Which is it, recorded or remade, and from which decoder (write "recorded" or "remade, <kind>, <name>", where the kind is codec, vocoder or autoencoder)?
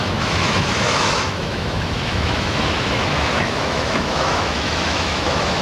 remade, autoencoder, DAC-VAE